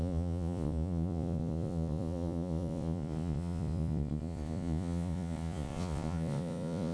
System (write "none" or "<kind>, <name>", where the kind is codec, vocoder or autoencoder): vocoder, Vocos